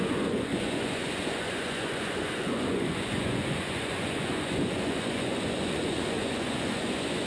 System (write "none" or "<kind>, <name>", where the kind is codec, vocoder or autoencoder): vocoder, Vocos